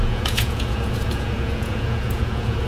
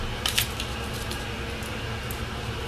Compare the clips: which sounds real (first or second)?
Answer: second